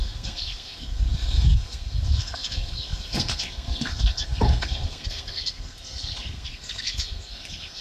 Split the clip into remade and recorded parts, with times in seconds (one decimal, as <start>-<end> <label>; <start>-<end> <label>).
0.0-7.8 remade